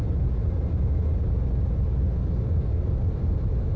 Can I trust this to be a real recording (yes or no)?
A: yes